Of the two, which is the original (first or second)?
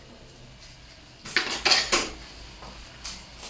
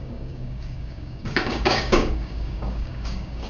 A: first